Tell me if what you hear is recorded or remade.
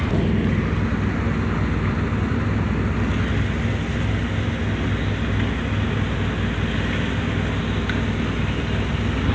recorded